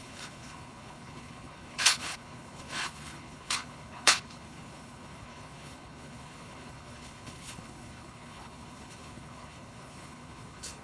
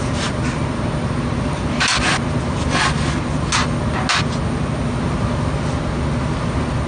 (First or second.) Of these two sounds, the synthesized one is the first